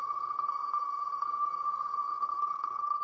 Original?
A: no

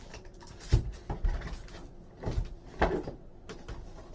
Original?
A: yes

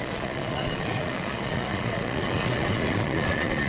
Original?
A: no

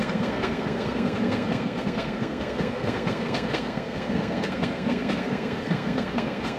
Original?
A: no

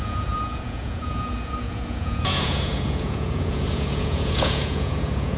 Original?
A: no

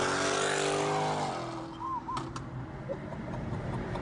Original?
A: yes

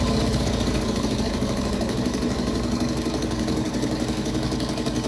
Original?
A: no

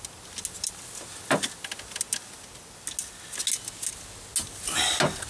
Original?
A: yes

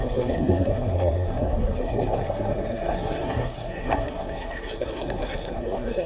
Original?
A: no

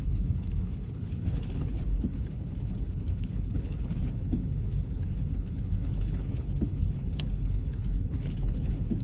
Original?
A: no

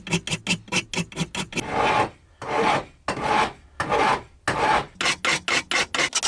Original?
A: yes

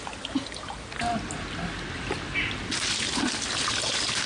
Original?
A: yes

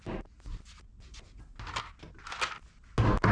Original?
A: yes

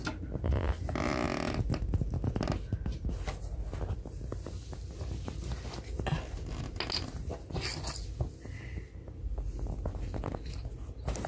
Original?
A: yes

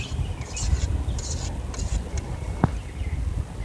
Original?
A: yes